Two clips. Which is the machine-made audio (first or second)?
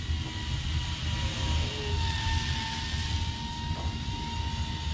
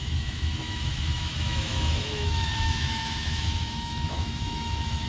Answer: second